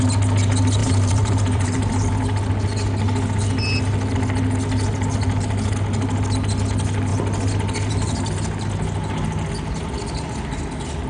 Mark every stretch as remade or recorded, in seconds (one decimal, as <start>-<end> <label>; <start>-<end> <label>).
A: 0.0-0.8 recorded; 0.8-1.9 remade; 1.9-11.1 recorded